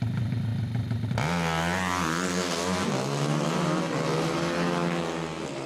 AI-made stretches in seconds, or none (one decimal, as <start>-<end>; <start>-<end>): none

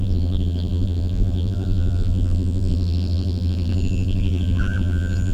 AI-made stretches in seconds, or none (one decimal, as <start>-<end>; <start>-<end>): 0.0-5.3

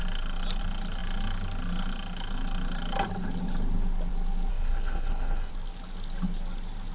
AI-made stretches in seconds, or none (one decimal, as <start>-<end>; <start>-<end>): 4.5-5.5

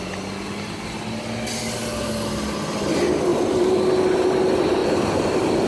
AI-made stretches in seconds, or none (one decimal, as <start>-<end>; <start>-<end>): 3.3-3.8; 4.8-5.3

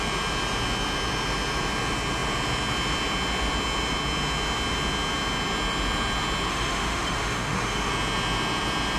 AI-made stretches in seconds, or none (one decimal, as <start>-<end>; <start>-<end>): 6.5-7.9

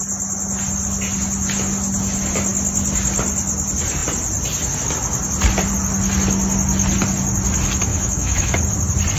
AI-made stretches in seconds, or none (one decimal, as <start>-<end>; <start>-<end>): 7.9-8.6

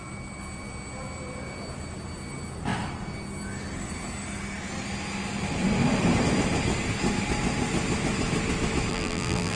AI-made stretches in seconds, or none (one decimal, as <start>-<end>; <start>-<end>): 8.9-9.6